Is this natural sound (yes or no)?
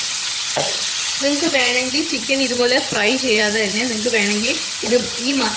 no